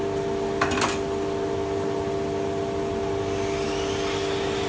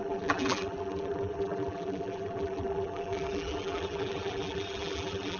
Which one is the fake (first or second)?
second